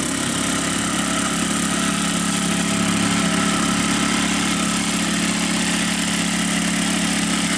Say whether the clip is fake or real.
real